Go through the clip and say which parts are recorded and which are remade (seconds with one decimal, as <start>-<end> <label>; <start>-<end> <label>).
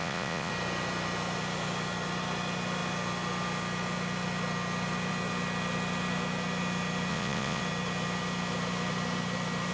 0.0-0.5 remade; 0.5-7.1 recorded; 7.1-7.6 remade; 7.6-9.7 recorded